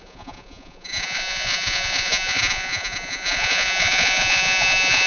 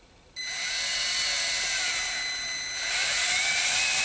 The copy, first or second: first